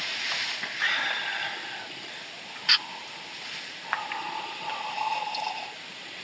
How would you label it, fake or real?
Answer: real